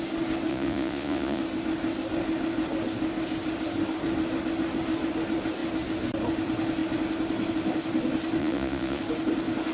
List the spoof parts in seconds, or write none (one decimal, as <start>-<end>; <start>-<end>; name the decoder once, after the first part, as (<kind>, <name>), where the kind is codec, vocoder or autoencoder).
0.5-1.4 (vocoder, Vocos); 8.4-9.0